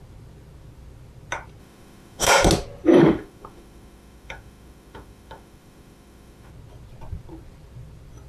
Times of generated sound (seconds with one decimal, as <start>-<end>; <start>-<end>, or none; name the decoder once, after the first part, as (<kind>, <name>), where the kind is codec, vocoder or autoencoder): 1.6-2.3 (autoencoder, DAC-VAE); 3.0-6.5